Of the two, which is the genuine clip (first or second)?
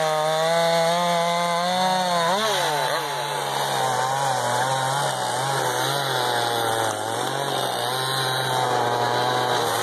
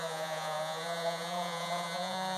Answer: first